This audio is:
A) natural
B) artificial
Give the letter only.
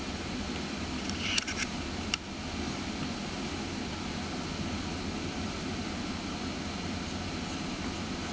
A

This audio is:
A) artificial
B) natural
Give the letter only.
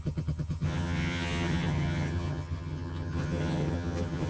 A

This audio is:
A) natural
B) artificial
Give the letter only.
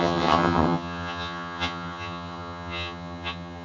B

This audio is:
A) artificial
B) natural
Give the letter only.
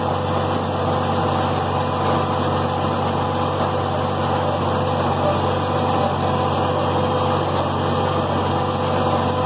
B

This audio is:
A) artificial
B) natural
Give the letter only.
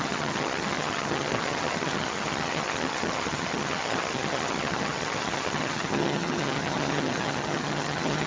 A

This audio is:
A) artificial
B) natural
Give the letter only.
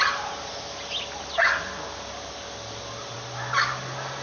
B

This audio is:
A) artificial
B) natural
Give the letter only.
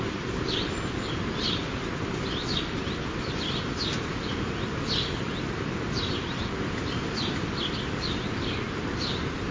B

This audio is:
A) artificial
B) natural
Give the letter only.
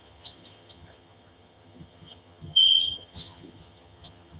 A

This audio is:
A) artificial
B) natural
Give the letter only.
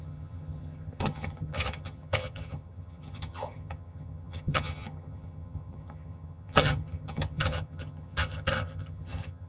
A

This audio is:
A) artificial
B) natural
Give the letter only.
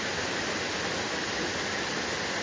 B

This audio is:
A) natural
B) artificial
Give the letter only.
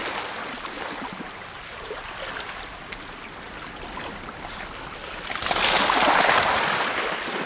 A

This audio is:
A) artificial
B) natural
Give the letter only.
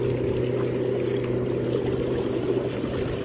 B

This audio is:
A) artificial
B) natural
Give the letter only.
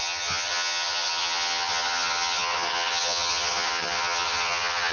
A